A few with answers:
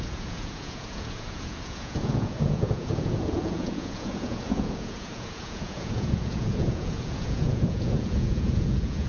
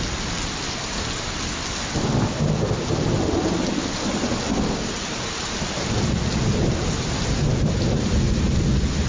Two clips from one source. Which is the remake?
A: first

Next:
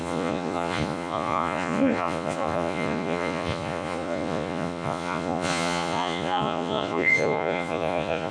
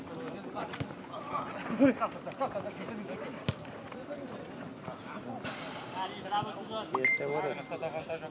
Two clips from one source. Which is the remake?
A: first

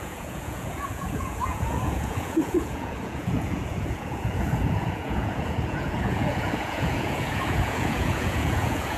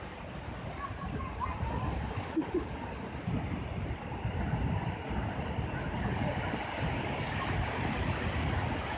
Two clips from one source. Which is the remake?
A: first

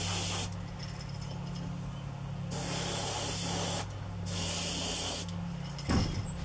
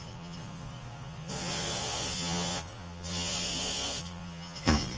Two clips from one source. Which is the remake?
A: second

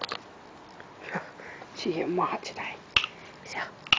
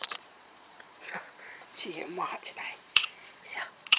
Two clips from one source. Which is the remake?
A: second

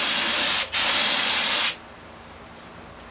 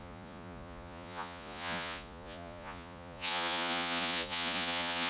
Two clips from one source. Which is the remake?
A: second